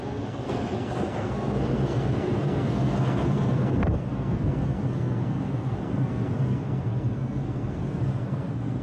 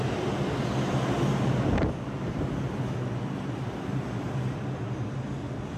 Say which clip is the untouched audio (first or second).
second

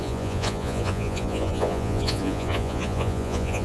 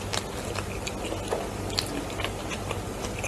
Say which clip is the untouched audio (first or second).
second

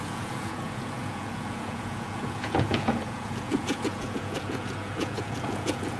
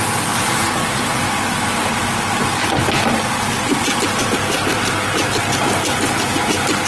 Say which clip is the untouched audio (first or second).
second